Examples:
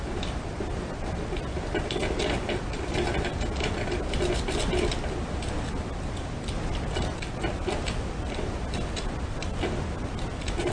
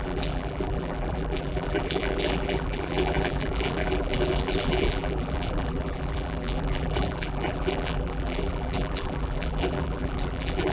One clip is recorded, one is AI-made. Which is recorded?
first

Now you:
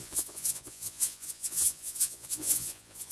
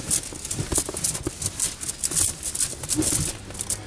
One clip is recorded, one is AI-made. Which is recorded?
second